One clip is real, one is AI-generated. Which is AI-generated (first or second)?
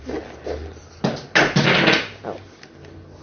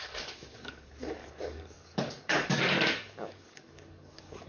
second